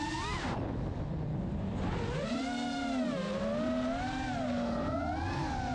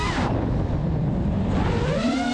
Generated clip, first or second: second